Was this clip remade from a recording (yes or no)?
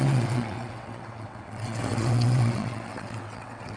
yes